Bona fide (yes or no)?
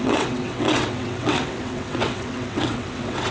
no